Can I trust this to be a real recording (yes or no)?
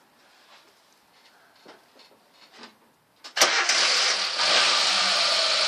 yes